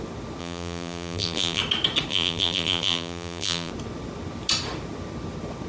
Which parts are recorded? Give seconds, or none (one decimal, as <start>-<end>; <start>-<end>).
0.0-0.4; 1.6-2.1; 3.7-5.7

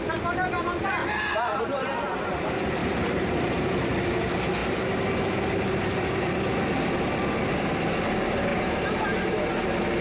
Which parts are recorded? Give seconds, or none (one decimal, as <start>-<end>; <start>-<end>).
0.0-1.0; 1.6-2.8; 3.5-8.5; 9.5-10.0

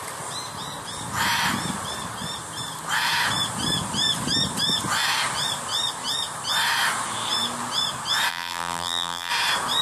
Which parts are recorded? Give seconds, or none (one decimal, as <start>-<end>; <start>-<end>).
0.0-8.3; 9.3-9.8

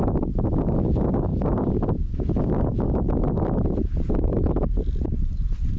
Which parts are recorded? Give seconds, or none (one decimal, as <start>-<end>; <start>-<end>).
0.0-1.3; 4.8-5.8